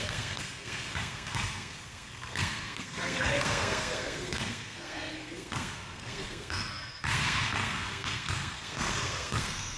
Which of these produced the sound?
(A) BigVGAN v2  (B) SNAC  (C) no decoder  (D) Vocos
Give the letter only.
B